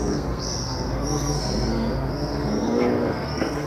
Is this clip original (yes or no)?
no